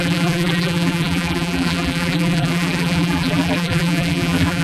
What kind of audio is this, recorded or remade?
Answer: remade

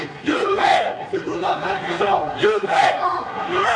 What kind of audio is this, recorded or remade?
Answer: remade